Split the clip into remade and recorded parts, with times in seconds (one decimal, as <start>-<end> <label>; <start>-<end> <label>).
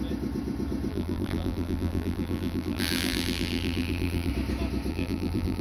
0.0-0.9 recorded; 0.9-4.3 remade; 4.3-4.9 recorded; 4.9-5.6 remade